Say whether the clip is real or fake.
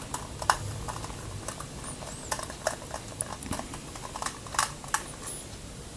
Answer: fake